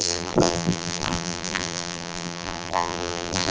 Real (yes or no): no